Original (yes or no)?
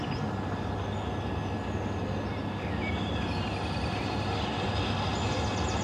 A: yes